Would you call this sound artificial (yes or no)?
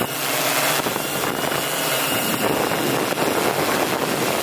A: no